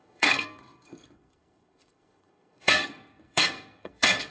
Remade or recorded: remade